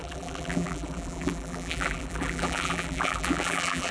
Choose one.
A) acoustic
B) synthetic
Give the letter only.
B